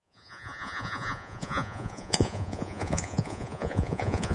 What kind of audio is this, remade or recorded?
remade